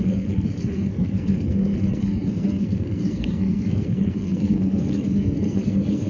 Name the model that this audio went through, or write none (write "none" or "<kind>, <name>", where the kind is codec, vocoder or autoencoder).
codec, SNAC